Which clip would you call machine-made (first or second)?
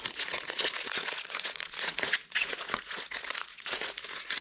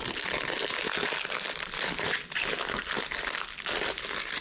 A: first